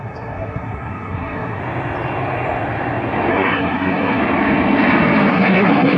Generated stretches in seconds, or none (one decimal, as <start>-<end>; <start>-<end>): 0.0-1.6; 3.3-4.2; 5.3-6.0